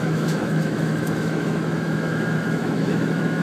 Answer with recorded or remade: remade